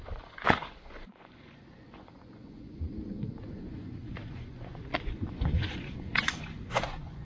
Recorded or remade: remade